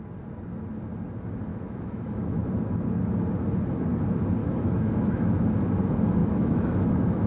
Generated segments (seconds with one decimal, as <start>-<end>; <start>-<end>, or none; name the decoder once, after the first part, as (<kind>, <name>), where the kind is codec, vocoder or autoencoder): 1.5-2.5 (autoencoder, DAC-VAE); 4.4-5.3; 6.2-7.3